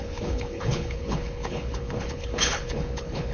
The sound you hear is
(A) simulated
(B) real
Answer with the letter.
A